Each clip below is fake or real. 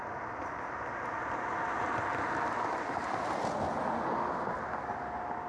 real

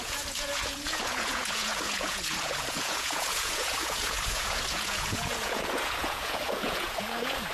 fake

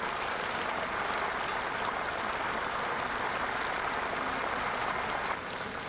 real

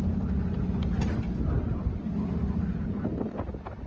real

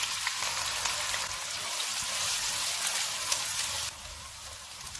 real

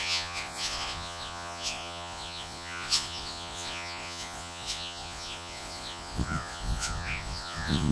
fake